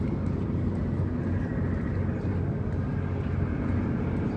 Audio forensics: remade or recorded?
recorded